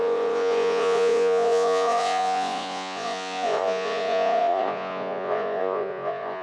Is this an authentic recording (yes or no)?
no